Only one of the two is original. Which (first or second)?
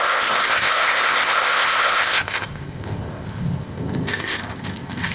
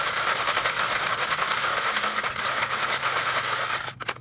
second